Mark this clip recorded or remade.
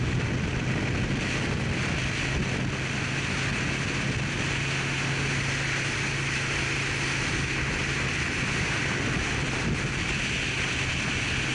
recorded